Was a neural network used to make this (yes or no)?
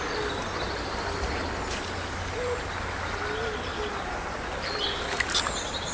no